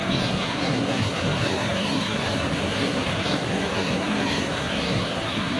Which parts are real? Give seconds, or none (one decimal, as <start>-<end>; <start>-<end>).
none